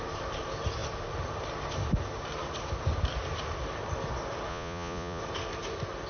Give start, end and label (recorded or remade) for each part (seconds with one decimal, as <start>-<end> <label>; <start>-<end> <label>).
0.0-4.5 recorded; 4.5-5.2 remade; 5.2-6.1 recorded